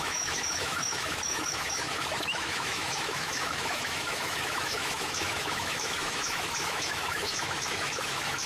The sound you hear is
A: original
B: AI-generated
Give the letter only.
B